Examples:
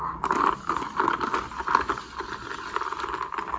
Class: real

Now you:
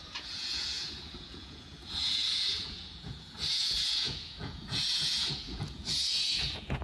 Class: fake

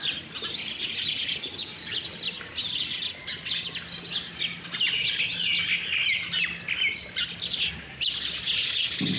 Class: real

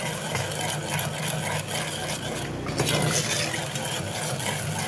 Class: real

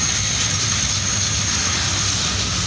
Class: real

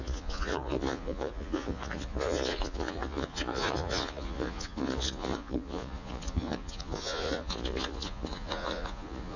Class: fake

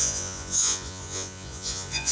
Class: fake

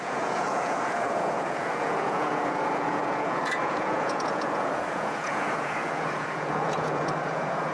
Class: fake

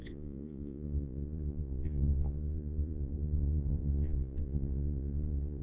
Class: fake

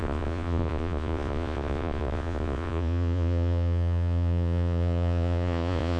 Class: fake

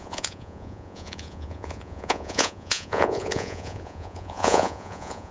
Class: fake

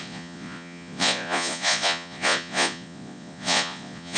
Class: fake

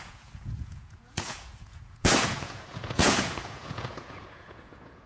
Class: fake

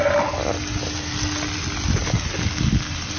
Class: real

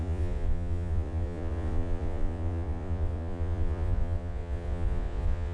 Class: fake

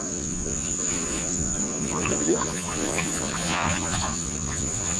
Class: fake